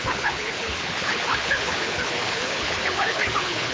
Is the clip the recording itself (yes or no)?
no